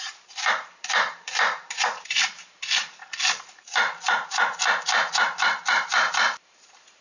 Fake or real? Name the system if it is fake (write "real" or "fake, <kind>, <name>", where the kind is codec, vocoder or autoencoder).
fake, vocoder, BigVGAN v2